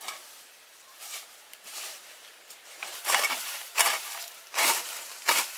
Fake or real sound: fake